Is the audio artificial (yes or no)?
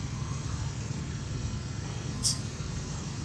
yes